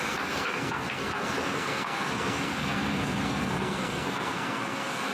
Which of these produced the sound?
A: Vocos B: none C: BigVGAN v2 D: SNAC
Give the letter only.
D